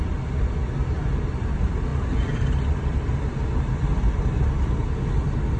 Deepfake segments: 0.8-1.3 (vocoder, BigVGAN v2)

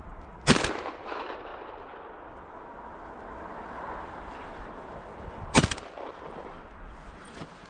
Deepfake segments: 0.0-1.5 (vocoder, BigVGAN v2); 4.0-7.7